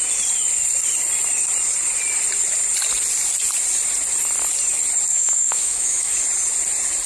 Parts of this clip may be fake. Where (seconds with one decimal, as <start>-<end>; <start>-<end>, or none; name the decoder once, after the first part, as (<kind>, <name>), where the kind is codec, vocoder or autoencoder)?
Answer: 5.1-6.2 (autoencoder, DAC-VAE)